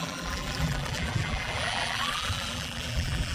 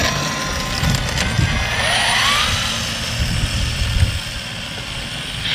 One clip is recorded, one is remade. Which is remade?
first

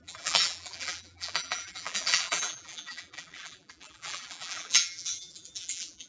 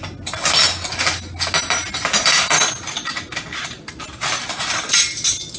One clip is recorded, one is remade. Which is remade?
first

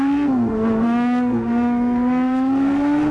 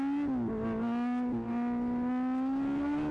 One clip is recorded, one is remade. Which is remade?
first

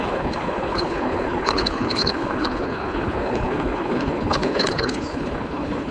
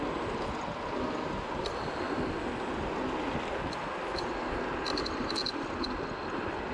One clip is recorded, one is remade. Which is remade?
first